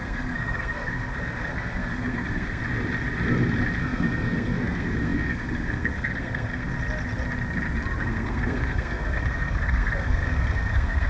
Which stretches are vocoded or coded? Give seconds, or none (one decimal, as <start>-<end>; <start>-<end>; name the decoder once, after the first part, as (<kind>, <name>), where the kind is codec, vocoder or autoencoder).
0.0-2.6 (codec, SNAC); 3.8-6.7; 8.0-11.1